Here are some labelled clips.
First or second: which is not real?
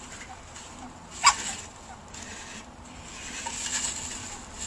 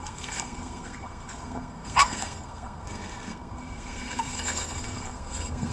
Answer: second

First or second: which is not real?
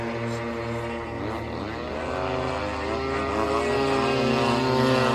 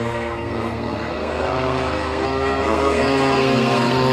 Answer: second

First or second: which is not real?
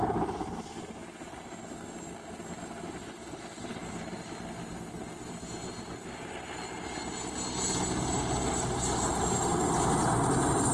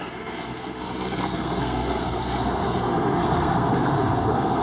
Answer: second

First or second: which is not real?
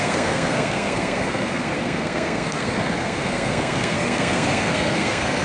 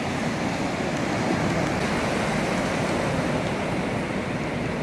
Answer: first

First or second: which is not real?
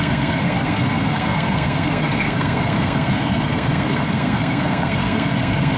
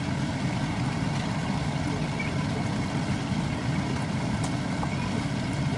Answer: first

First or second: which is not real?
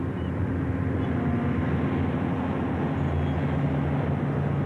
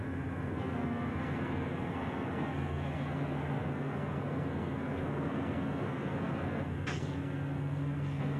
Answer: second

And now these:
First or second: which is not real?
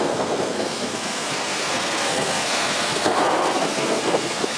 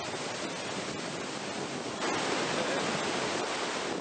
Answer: first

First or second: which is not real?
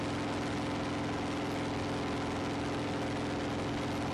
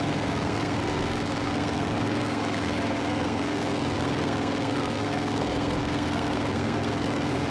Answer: second